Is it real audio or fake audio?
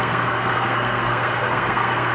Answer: fake